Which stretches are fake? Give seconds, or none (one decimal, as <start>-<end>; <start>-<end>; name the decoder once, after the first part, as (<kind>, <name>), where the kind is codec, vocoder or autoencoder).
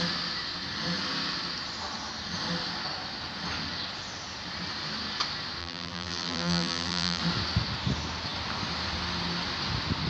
5.6-7.2 (vocoder, BigVGAN v2)